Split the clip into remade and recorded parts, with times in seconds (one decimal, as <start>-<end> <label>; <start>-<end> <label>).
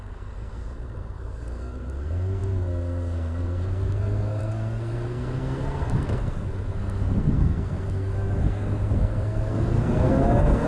0.0-10.7 remade